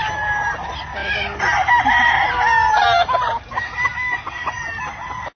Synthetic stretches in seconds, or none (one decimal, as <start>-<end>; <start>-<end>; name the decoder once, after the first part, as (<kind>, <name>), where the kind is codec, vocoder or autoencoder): none